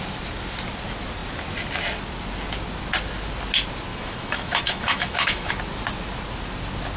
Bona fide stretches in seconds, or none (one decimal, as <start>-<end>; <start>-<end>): 0.0-3.9; 5.5-7.0